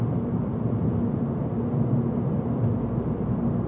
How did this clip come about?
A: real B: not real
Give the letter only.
A